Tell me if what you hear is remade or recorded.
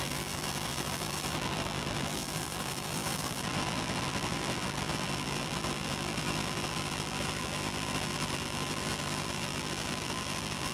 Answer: remade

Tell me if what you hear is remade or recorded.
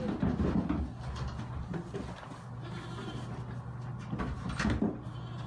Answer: recorded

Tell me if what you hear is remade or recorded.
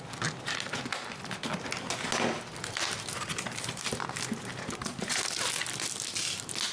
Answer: recorded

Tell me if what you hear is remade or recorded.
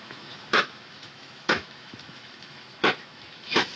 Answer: remade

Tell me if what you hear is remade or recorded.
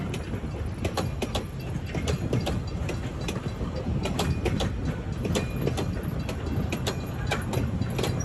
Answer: recorded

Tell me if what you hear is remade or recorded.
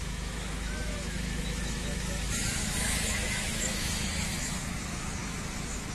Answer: remade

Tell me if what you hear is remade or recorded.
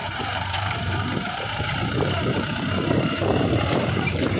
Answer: remade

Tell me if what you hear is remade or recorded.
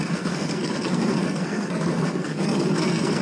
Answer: remade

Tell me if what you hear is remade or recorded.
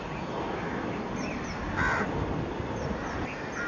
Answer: recorded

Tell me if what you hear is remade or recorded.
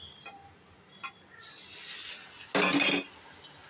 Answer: recorded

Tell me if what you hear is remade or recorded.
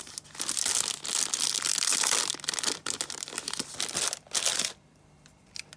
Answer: recorded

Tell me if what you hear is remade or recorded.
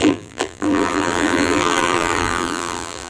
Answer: remade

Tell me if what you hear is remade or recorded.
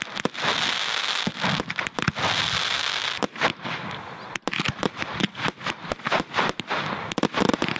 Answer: recorded